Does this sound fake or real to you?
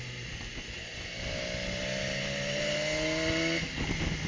real